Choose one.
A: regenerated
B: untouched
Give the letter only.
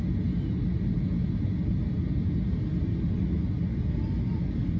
B